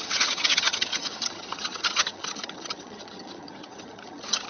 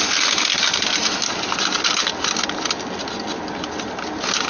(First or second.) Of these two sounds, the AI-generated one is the first